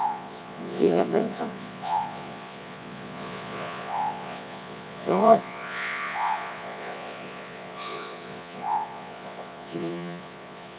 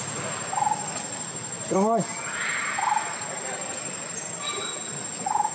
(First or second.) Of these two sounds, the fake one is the first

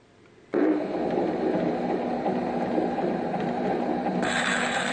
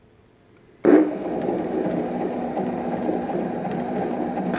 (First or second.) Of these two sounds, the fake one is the second